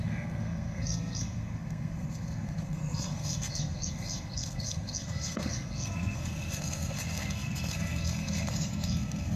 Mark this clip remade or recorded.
remade